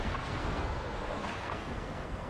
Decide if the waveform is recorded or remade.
remade